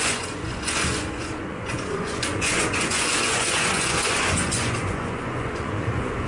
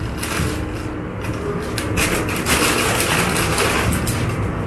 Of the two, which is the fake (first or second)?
first